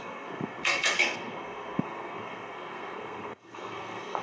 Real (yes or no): no